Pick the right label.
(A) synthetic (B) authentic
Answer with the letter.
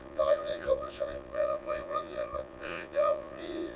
A